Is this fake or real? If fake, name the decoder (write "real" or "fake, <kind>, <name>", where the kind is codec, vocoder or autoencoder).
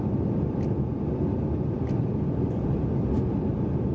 real